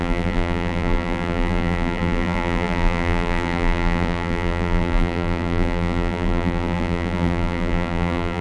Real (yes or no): no